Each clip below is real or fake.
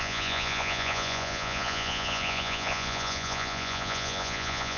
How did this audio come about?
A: fake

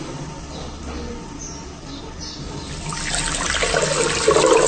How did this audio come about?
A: real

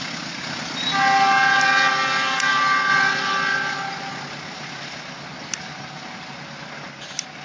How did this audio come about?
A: real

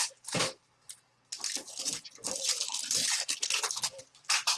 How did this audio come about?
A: real